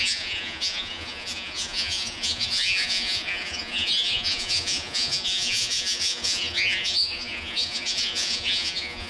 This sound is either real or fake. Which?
fake